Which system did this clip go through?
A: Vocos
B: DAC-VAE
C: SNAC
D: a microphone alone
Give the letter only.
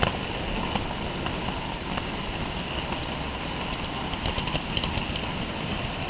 D